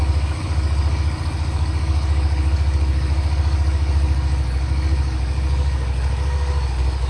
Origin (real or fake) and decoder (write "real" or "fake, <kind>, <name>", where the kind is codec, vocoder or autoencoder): fake, codec, DAC